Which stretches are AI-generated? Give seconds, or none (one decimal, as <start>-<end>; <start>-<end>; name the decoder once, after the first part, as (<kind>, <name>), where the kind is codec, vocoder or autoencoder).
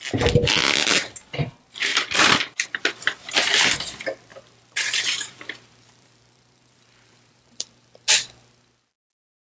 1.9-3.6 (vocoder, BigVGAN v2); 4.3-7.7